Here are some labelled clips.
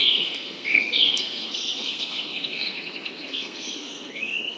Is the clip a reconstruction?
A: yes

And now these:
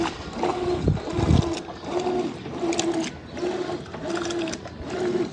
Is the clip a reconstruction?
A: no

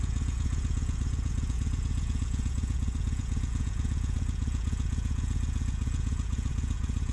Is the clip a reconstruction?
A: yes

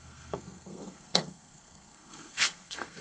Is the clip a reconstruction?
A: yes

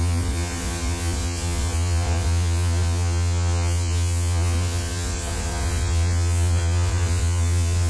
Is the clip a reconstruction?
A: yes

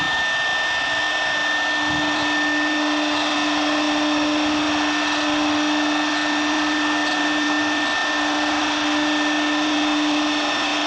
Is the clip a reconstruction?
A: no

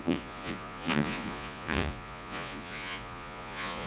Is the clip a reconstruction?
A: yes